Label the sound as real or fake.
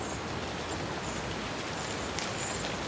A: real